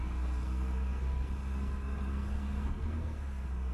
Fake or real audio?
fake